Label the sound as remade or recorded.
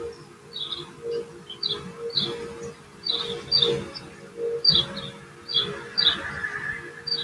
recorded